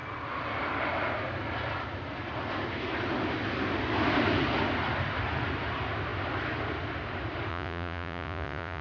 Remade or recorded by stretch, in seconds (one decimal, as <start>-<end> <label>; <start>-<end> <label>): 0.0-7.5 recorded; 7.5-8.8 remade